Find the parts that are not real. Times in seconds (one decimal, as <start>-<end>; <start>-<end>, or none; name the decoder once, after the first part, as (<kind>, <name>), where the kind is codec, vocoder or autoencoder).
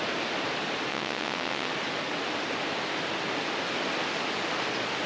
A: 0.9-1.7 (vocoder, WaveNeXt)